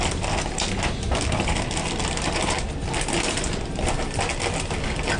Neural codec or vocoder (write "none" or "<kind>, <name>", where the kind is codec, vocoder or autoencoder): none